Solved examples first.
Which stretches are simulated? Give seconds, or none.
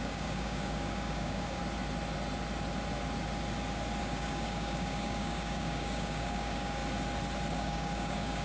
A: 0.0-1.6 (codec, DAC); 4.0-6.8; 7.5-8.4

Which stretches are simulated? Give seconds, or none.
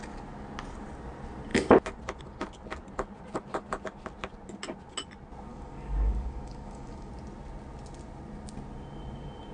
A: 5.5-7.1 (codec, DAC)